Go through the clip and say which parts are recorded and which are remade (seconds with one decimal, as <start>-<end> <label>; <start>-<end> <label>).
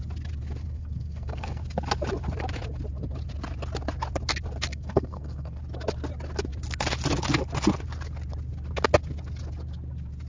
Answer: 0.0-0.6 recorded; 0.6-1.6 remade; 1.6-4.7 recorded; 4.7-5.6 remade; 5.6-10.3 recorded